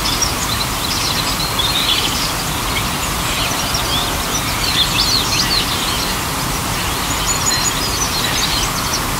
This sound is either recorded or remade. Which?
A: recorded